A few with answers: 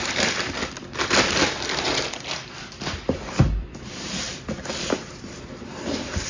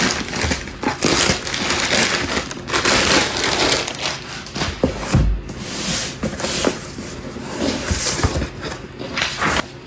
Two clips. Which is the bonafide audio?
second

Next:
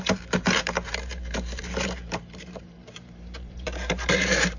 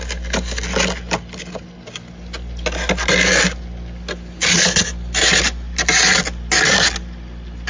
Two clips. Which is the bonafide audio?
second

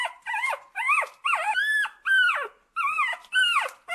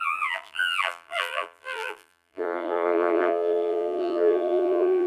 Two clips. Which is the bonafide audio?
first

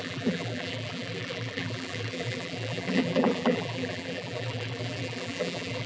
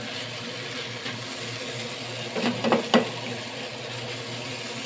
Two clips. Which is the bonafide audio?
second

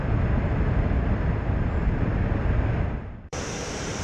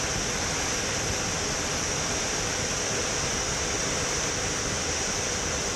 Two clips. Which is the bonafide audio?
second